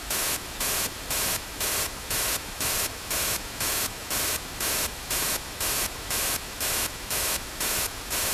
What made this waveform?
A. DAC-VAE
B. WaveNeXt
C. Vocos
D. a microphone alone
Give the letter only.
A